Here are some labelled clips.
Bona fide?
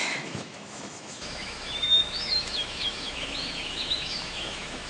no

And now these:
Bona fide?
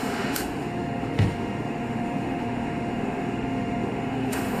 no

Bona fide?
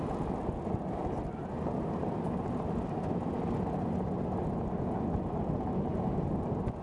yes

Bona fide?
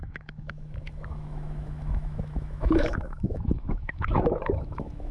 no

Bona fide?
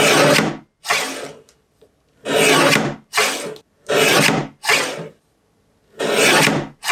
yes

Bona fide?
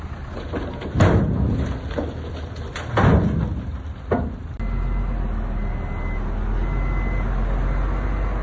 yes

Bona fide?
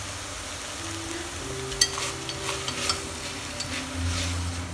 yes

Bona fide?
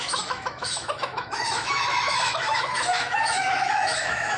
no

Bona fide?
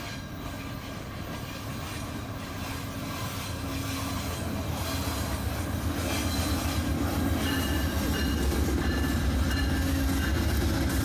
yes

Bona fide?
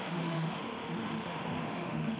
no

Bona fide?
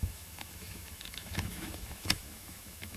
no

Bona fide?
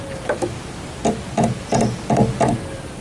yes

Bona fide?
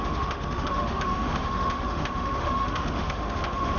no